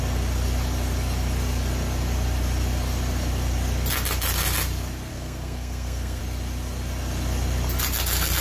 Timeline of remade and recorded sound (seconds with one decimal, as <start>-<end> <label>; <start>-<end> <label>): 0.0-5.1 recorded; 5.1-6.2 remade; 6.2-8.4 recorded